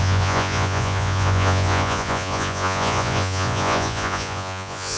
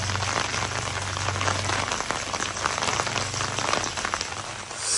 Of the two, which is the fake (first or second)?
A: first